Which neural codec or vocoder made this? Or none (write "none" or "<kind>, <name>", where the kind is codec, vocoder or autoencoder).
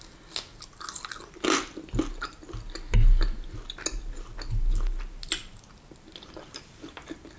none